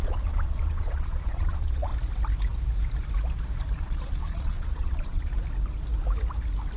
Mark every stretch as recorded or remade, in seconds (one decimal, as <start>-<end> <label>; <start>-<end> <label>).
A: 0.0-1.9 remade; 1.9-3.8 recorded; 3.8-5.4 remade; 5.4-6.8 recorded